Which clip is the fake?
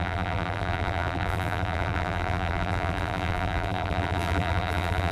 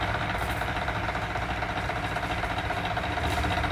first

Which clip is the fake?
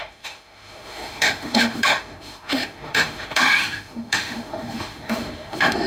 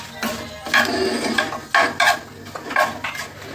first